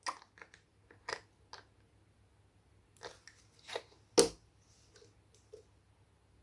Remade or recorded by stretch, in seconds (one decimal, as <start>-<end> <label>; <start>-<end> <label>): 0.0-6.4 recorded